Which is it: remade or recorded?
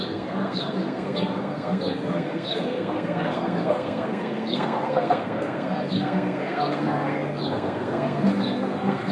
remade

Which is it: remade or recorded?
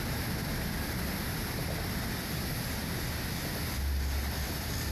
recorded